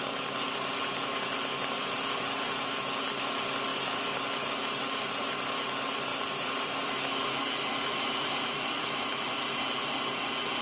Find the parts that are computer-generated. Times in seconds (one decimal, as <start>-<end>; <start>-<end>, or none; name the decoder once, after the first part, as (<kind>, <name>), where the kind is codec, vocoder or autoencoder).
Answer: 6.1-7.0 (vocoder, BigVGAN v2); 7.7-9.3